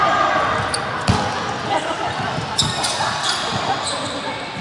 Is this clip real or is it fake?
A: real